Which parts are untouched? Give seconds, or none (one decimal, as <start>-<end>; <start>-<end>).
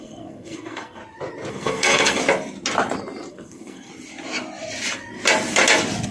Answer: 1.0-1.5; 2.2-3.3; 3.9-6.1